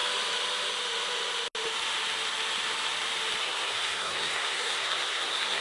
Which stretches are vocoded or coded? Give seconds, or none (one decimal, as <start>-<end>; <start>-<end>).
3.4-5.6